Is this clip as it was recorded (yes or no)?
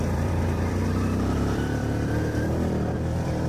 no